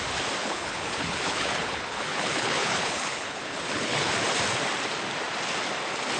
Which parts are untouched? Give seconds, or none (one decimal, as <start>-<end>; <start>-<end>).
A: 0.0-0.4; 4.1-6.2